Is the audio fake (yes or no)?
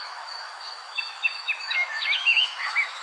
yes